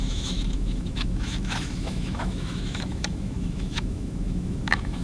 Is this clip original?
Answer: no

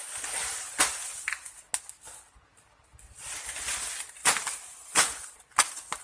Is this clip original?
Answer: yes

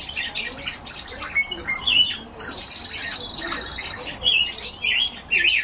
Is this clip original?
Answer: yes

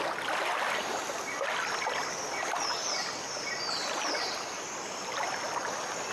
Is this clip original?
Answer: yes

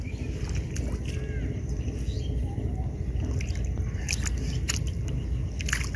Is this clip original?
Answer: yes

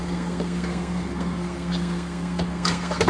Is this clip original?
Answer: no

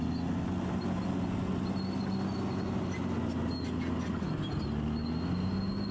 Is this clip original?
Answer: yes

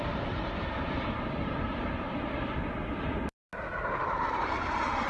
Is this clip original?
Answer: no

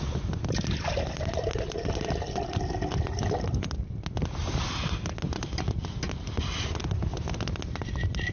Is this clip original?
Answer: yes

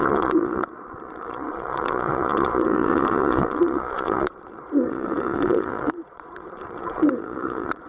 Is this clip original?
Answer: no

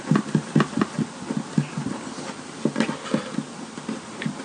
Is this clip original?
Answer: yes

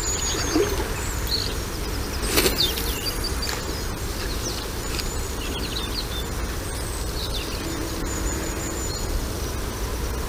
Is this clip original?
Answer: yes